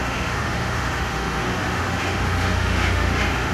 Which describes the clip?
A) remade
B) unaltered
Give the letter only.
A